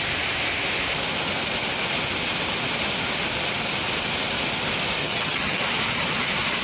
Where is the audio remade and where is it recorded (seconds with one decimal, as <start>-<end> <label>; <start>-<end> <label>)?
0.0-5.0 recorded; 5.0-5.6 remade; 5.6-6.6 recorded